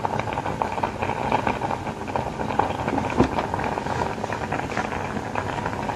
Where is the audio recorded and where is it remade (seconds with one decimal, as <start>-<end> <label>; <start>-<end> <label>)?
0.0-6.0 recorded